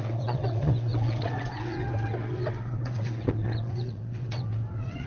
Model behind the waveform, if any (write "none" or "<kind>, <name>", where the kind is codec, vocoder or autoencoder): vocoder, WaveNeXt